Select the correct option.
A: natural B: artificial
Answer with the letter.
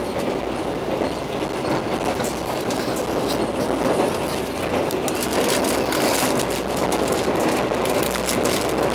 A